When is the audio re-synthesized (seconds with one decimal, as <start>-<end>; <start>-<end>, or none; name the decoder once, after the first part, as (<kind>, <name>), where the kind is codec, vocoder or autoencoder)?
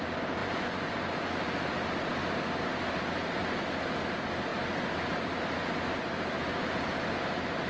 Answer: 0.4-1.3 (vocoder, Vocos)